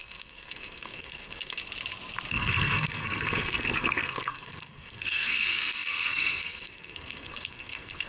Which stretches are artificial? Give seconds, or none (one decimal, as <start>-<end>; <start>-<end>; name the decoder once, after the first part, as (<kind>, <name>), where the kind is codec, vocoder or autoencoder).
0.0-1.6 (codec, SNAC); 2.3-8.1